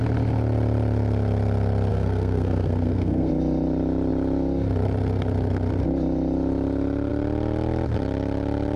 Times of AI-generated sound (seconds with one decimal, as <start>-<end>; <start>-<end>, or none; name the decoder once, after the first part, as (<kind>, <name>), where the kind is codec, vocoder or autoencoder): 1.9-3.3 (codec, SNAC)